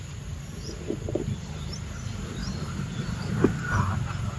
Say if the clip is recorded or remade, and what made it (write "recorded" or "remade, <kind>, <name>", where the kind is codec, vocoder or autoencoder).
recorded